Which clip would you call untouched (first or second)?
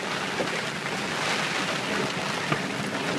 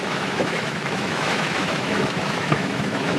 first